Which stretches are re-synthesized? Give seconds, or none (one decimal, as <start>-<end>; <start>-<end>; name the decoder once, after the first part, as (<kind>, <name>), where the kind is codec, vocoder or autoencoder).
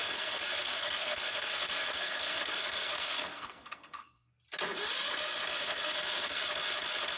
0.0-4.3 (codec, SNAC); 5.6-6.4